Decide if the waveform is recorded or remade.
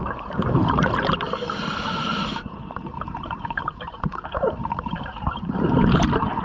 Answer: remade